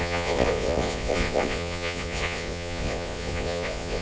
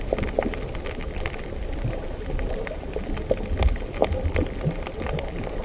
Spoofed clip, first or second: first